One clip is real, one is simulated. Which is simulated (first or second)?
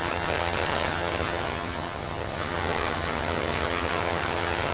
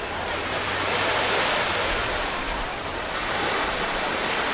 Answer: first